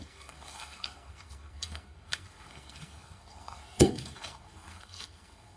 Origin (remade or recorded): remade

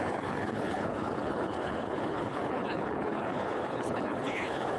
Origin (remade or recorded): remade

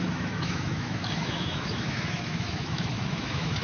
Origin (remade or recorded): remade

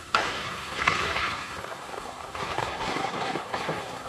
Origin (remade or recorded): remade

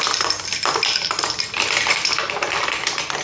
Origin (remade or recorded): recorded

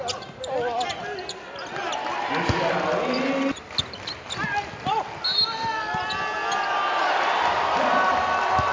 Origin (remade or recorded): recorded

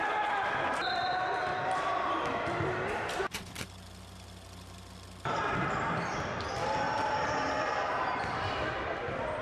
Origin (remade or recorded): remade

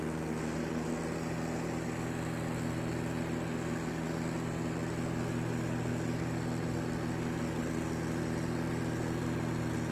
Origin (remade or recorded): recorded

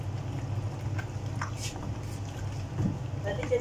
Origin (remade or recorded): recorded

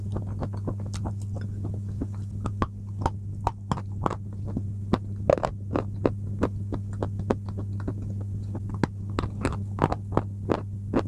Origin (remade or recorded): recorded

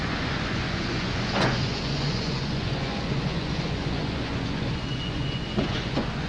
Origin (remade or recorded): remade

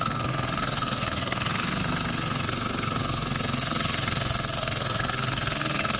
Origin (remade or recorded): remade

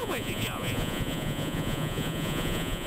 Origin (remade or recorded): remade